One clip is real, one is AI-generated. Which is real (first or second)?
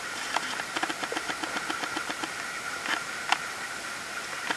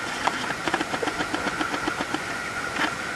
first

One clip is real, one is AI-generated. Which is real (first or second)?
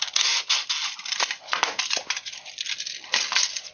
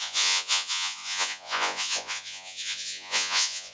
first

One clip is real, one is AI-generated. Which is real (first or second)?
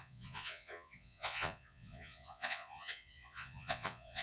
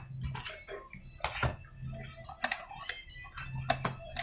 second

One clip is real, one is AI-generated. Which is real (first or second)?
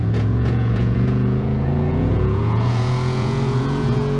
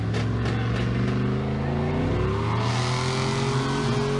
second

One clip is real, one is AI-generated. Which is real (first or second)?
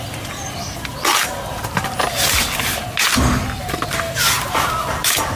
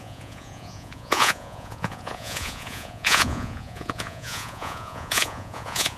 first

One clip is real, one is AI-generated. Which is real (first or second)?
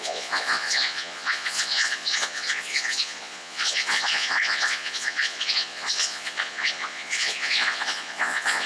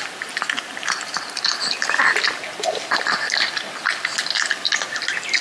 second